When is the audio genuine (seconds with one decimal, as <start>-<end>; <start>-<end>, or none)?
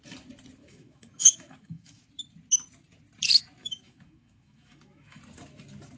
0.0-0.6; 2.0-3.6; 5.2-6.0